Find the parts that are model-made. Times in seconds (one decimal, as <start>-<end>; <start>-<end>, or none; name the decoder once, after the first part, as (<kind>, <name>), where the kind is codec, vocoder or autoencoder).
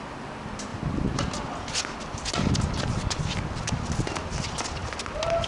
none